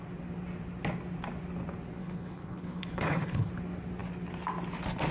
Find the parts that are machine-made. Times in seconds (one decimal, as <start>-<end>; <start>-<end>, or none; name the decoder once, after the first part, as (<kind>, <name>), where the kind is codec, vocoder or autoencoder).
2.0-3.5 (codec, HILCodec)